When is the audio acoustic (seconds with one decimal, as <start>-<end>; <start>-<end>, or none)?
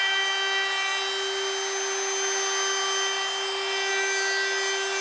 0.0-5.0